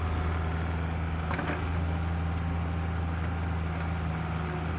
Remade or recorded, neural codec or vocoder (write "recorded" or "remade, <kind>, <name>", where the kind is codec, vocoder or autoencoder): recorded